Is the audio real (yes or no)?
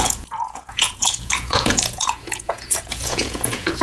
no